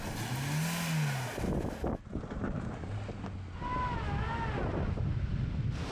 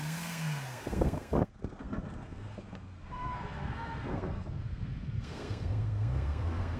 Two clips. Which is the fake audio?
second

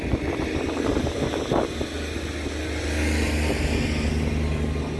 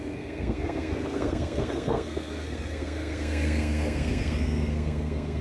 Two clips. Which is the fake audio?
second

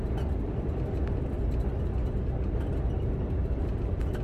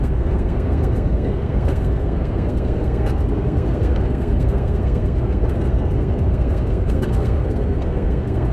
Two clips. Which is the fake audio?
second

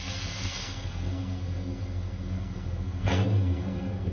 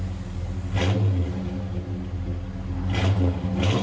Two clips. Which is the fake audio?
first